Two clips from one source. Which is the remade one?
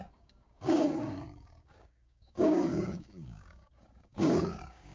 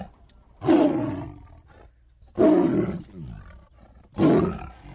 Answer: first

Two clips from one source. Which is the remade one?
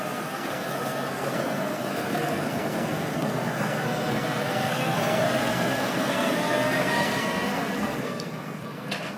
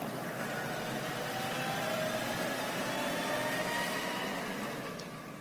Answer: first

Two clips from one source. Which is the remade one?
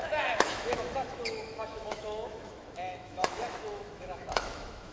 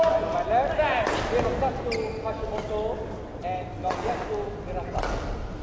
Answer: first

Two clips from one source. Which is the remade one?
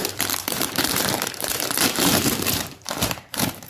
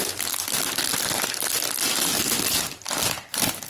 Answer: first